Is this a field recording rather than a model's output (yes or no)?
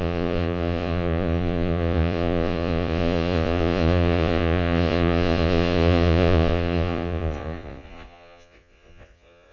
no